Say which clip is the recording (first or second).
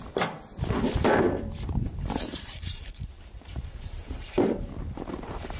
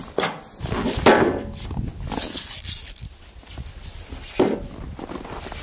second